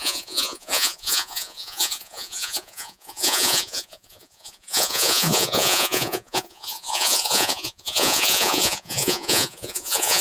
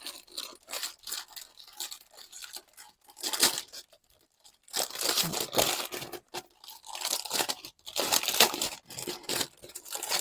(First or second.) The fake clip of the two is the first